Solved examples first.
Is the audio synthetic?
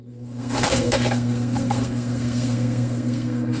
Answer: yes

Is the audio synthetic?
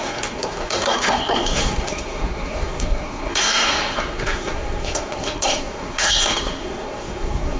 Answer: yes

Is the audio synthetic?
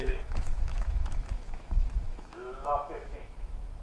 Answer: yes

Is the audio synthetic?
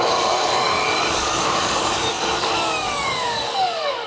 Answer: yes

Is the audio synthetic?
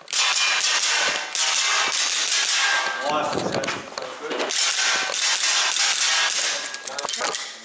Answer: no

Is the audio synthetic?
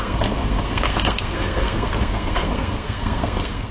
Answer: yes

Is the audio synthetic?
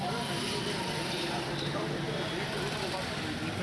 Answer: yes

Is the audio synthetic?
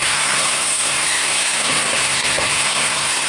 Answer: yes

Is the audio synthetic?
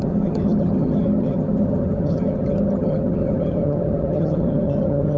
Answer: yes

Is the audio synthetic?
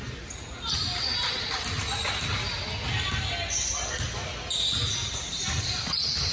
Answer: no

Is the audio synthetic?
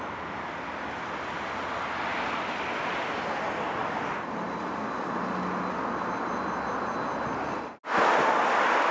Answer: no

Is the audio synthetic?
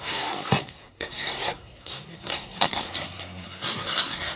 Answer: yes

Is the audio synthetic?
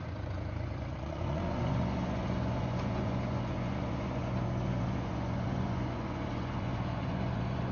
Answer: yes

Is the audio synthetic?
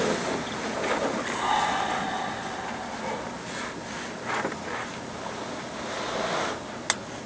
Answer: no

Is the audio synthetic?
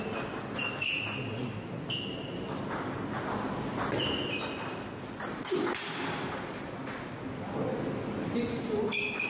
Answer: no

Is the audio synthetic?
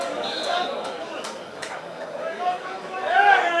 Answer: yes